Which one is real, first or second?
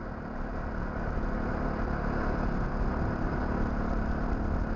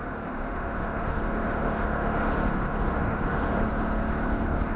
first